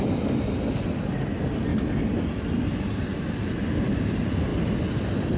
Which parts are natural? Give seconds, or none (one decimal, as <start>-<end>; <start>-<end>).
1.7-2.6; 4.5-5.4